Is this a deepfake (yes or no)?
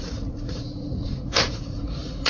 yes